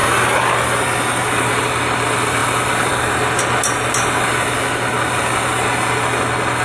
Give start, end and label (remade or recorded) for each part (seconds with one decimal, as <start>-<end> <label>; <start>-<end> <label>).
0.0-6.6 recorded